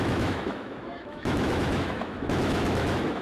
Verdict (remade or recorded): remade